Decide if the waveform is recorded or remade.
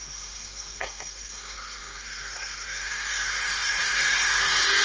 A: remade